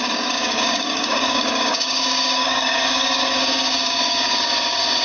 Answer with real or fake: fake